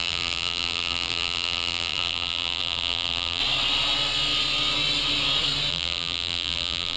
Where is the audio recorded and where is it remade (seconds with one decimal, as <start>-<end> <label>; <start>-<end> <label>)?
0.0-3.4 remade; 3.4-5.7 recorded; 5.7-7.0 remade